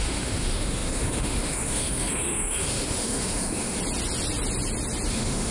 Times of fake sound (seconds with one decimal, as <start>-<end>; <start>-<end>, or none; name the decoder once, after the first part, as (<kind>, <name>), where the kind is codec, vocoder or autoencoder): 0.0-3.8 (autoencoder, DAC-VAE); 5.1-5.5